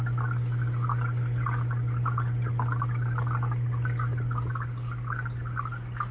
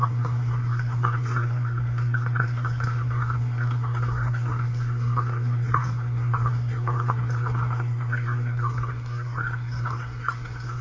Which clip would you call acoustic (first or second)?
first